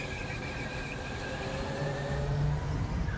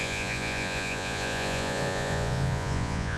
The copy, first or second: second